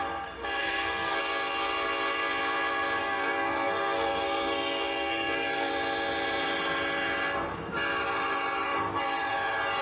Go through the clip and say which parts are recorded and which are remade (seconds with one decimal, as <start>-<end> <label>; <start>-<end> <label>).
0.0-0.6 recorded; 0.6-1.2 remade; 1.2-3.0 recorded; 3.0-5.7 remade; 5.7-9.8 recorded